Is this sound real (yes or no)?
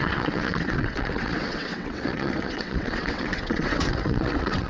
no